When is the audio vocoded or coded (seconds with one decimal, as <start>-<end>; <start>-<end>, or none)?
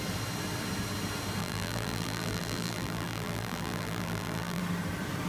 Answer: 1.4-4.6